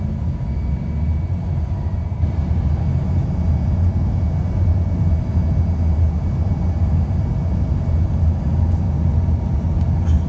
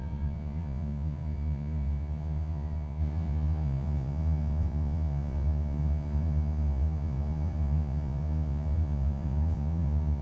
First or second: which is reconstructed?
second